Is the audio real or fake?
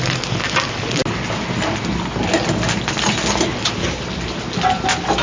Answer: real